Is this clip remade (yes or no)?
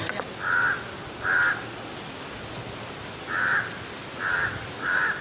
no